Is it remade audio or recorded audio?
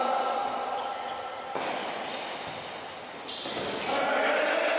recorded